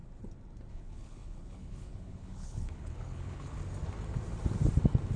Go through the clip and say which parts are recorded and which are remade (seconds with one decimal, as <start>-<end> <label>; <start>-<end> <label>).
0.0-0.7 recorded; 0.7-3.6 remade; 3.6-5.2 recorded